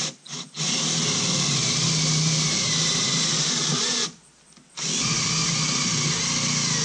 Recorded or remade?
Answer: recorded